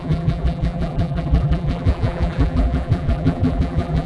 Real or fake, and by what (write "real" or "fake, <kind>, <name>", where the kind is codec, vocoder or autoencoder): fake, vocoder, BigVGAN v2